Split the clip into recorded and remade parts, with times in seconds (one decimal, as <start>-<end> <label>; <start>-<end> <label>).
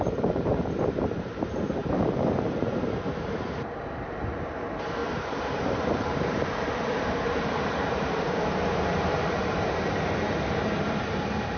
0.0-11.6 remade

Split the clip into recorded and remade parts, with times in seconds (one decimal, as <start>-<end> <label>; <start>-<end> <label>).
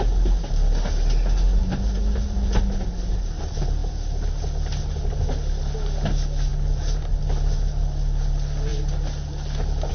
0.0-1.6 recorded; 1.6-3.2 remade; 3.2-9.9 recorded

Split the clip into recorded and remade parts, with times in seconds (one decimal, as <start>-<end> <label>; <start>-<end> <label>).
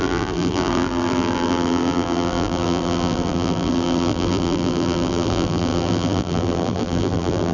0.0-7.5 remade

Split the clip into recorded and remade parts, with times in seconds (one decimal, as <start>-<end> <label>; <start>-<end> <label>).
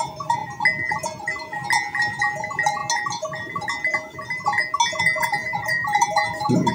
0.0-5.4 recorded; 5.4-6.7 remade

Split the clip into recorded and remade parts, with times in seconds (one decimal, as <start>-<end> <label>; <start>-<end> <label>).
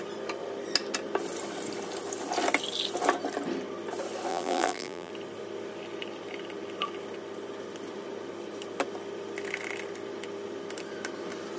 0.0-4.3 recorded; 4.3-5.1 remade; 5.1-11.6 recorded